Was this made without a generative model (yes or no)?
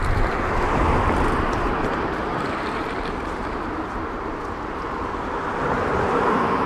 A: no